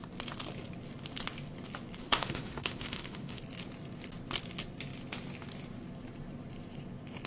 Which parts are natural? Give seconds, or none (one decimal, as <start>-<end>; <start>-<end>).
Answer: 0.0-2.0; 3.4-7.3